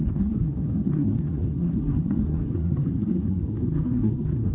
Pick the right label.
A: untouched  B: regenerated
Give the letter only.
B